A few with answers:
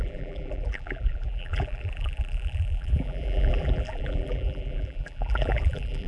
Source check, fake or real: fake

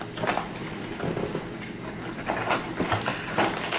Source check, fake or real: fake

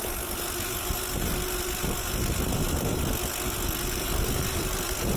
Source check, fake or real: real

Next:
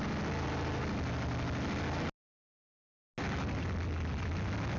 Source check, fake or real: real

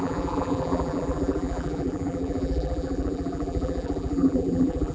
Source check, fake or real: fake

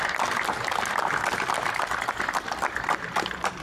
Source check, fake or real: fake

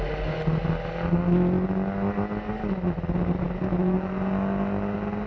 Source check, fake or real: real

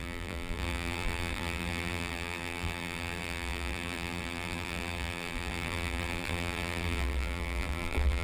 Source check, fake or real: fake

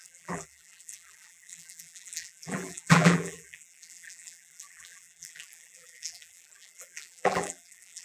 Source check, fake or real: fake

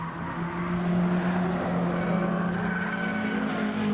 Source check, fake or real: real